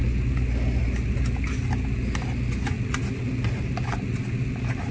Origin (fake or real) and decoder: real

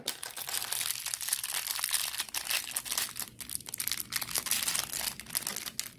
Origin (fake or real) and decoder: real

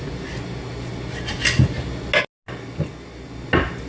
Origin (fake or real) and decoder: real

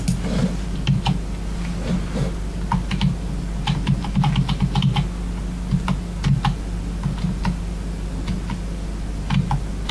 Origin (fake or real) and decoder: real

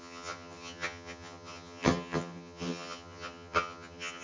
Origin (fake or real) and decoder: fake, vocoder, HiFi-GAN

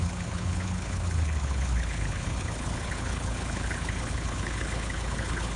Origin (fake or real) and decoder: fake, codec, HILCodec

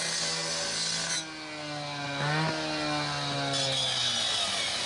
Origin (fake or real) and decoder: real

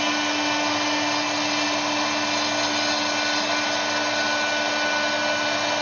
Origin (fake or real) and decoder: real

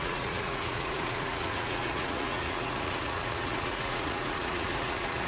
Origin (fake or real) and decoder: fake, vocoder, Vocos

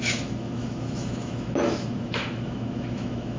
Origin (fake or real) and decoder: fake, autoencoder, DAC-VAE